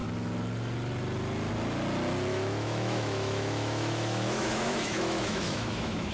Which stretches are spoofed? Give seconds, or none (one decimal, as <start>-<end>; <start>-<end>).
2.3-6.1